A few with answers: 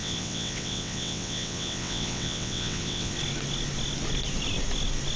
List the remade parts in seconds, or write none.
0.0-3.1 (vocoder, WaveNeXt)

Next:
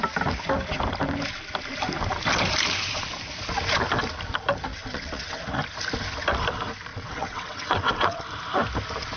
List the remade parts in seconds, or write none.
4.7-5.4 (vocoder, WaveNeXt); 6.9-8.2

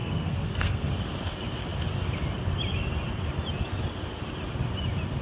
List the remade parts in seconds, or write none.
0.0-0.9 (codec, SNAC)

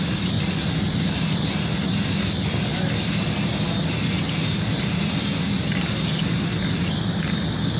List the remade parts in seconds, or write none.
none

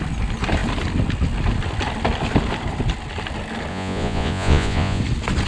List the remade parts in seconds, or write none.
3.7-5.0 (vocoder, Vocos)